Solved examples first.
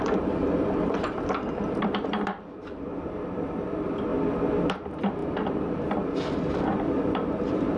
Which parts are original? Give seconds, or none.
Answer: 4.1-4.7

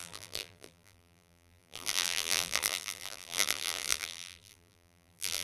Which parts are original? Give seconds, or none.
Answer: none

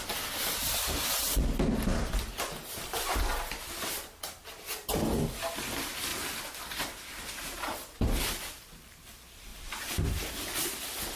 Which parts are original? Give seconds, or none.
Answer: 0.0-9.5; 10.4-11.2